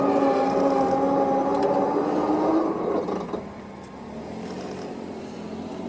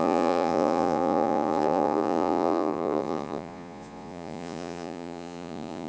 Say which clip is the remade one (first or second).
second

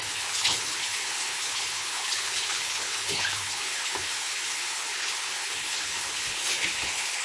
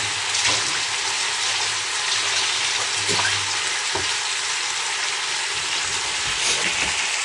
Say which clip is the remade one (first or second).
first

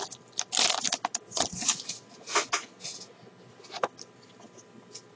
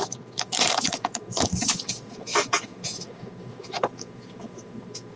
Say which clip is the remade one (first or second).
second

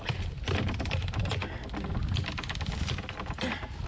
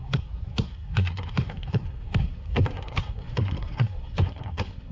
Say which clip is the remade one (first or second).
second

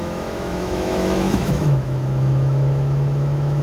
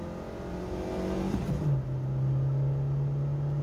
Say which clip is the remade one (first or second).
first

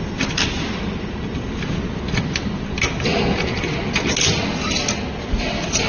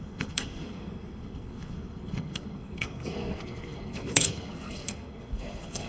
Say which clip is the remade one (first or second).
second